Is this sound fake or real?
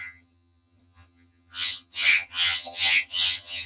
fake